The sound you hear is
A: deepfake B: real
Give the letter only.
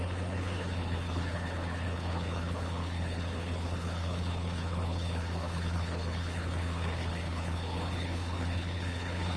A